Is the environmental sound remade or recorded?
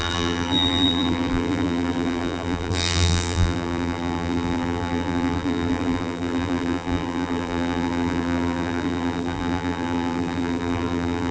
remade